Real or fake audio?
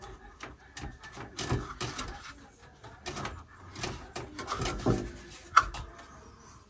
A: real